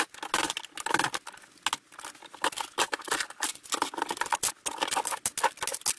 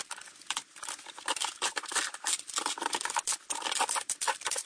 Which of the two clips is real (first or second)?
first